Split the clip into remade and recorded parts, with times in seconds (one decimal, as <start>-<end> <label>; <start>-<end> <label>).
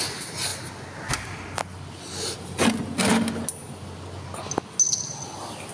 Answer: 0.0-5.7 recorded